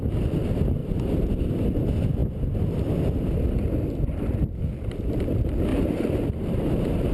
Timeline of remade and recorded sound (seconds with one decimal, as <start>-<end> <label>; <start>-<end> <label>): 0.0-5.7 recorded; 5.7-7.1 remade